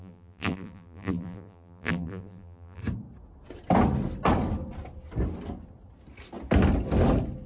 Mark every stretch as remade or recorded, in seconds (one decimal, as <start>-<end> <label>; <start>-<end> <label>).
0.0-2.8 remade; 2.8-7.5 recorded